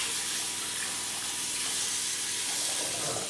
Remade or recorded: recorded